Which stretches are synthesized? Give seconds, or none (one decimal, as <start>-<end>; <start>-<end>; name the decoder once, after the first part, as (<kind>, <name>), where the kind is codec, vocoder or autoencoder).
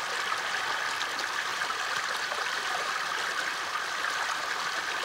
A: 1.5-4.5 (vocoder, BigVGAN v2)